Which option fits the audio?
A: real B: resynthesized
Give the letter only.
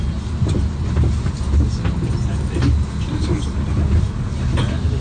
A